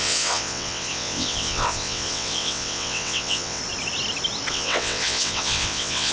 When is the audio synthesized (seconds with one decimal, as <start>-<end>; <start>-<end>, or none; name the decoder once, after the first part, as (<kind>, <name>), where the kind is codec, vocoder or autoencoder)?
0.0-3.6 (vocoder, WaveNeXt); 4.5-6.1